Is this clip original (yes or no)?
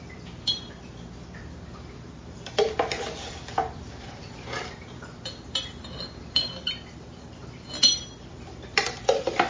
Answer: no